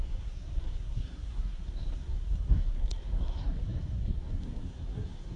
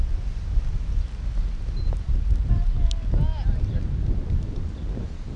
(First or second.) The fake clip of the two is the first